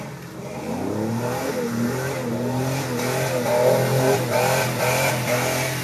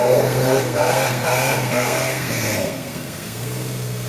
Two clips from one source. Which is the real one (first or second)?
first